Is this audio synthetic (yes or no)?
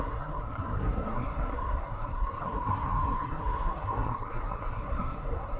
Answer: yes